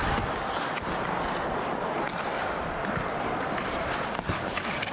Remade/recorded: recorded